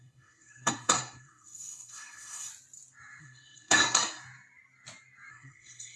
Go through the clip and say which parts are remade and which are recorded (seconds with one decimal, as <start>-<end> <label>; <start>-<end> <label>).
0.0-2.5 remade; 2.5-3.2 recorded; 3.2-4.0 remade; 4.0-5.3 recorded; 5.3-6.0 remade